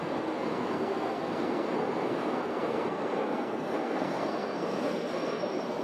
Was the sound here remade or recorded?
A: remade